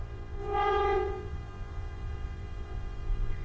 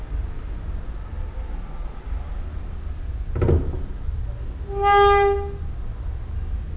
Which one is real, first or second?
second